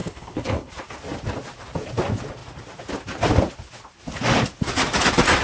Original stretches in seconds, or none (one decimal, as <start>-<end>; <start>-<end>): 0.7-5.4